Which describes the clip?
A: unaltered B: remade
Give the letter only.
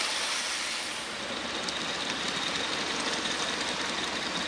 A